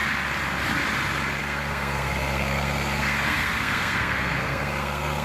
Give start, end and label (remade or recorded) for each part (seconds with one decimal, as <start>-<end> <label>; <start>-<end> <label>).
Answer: 0.0-1.4 recorded; 1.4-5.2 remade